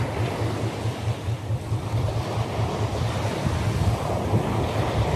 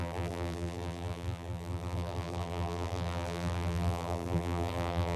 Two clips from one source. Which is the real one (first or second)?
first